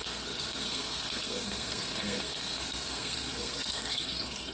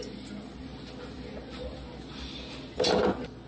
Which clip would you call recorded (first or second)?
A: second